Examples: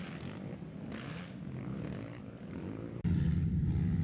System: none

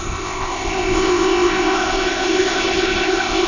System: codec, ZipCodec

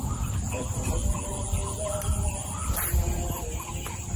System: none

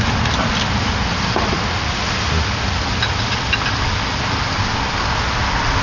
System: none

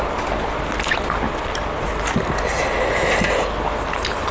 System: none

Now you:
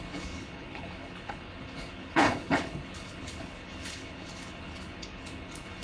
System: codec, HILCodec